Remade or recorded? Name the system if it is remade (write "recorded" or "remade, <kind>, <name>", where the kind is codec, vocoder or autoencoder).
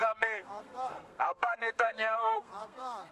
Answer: remade, codec, SNAC